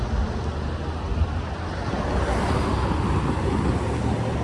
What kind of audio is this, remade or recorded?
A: recorded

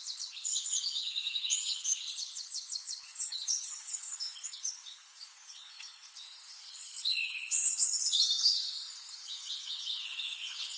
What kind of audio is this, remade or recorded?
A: remade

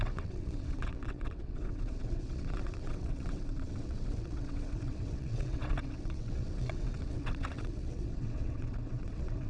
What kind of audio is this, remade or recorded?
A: remade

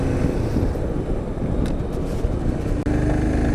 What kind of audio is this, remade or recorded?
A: recorded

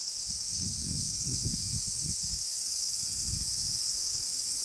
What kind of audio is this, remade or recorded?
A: remade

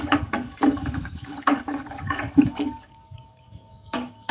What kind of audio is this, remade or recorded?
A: remade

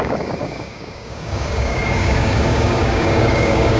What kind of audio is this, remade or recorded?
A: remade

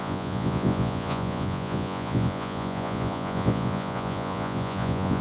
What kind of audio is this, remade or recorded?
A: remade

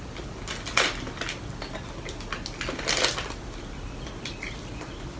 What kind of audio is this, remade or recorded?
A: recorded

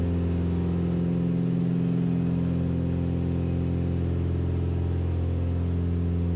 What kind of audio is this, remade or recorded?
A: recorded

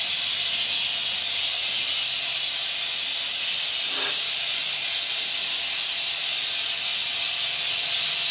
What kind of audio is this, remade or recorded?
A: recorded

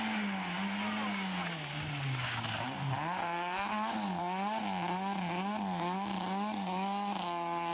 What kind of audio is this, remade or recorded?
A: recorded